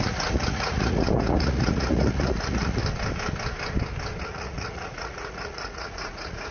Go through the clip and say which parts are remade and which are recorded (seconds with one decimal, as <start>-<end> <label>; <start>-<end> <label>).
0.0-2.8 remade; 2.8-4.2 recorded; 4.2-6.5 remade